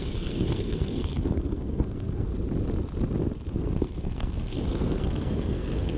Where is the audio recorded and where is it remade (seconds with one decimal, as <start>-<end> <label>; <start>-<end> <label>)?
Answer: 0.0-2.3 remade; 2.3-3.5 recorded; 3.5-6.0 remade